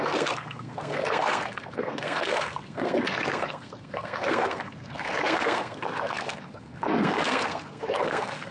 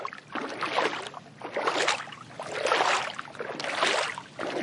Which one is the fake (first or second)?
first